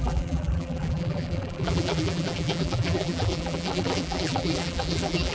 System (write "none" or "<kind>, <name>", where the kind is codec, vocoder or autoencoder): vocoder, BigVGAN v2